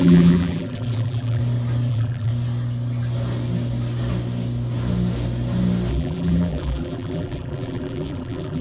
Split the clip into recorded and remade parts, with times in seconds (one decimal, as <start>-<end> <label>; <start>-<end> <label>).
0.0-1.4 remade; 1.4-1.9 recorded; 1.9-2.3 remade; 2.3-5.9 recorded; 5.9-8.6 remade

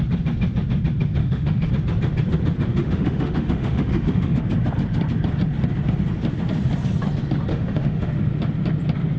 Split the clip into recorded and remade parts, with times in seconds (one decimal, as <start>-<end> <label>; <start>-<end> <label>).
0.0-1.2 recorded; 1.2-1.7 remade; 1.7-2.7 recorded; 2.7-4.4 remade; 4.4-7.5 recorded; 7.5-8.1 remade; 8.1-9.2 recorded

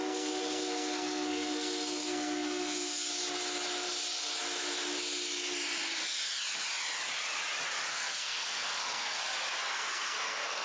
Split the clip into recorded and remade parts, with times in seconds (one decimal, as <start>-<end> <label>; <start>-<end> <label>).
0.0-3.1 remade; 3.1-7.9 recorded; 7.9-9.2 remade; 9.2-9.7 recorded; 9.7-10.6 remade

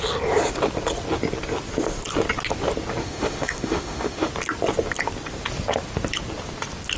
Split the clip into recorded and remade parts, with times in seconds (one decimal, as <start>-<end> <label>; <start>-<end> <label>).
0.0-3.0 recorded; 3.0-4.3 remade; 4.3-7.0 recorded

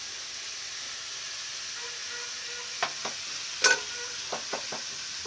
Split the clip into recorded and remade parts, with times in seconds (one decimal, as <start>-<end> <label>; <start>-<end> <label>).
0.0-5.3 recorded

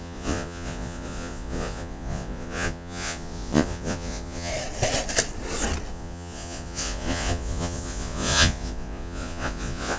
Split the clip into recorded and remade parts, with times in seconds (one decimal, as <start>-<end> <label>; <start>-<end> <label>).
0.0-4.5 remade; 4.5-5.9 recorded; 5.9-10.0 remade

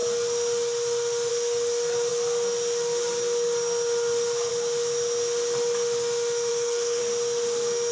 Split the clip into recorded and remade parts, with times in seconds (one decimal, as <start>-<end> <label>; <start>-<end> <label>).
0.0-6.5 recorded; 6.5-7.0 remade; 7.0-7.9 recorded

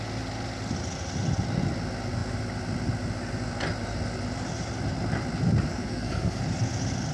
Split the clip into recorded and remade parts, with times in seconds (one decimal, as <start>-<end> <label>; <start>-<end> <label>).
0.0-5.7 recorded; 5.7-6.4 remade; 6.4-7.1 recorded